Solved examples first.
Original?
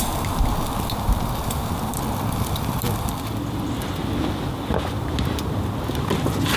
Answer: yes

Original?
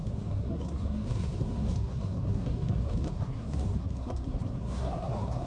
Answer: no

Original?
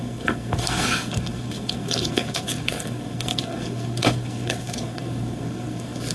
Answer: no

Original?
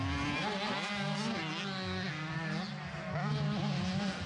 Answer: yes